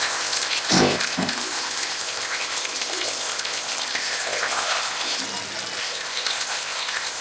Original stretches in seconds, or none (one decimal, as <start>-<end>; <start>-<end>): 5.2-5.8